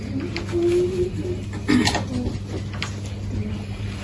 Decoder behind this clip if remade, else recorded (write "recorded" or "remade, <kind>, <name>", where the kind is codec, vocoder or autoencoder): recorded